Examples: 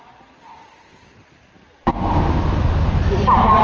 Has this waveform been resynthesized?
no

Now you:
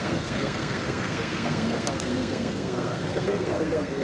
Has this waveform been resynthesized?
yes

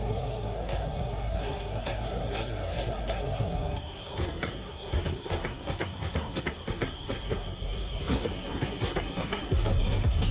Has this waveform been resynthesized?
yes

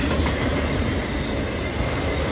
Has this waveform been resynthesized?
no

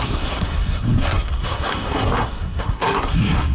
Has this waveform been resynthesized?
yes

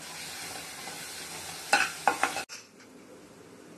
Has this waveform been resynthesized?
no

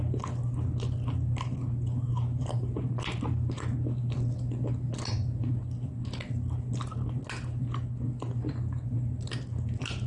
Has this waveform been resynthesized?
no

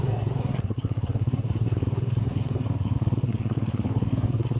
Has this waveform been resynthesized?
yes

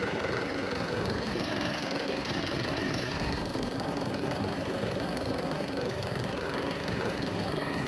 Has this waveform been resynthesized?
yes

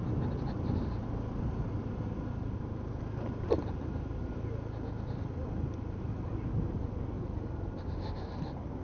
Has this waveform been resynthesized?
no